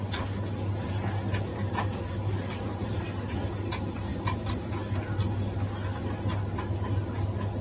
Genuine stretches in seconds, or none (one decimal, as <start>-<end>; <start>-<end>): 0.0-1.5; 3.0-7.6